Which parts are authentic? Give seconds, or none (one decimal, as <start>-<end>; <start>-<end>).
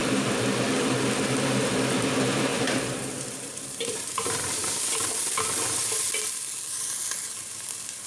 0.8-2.5; 4.8-8.1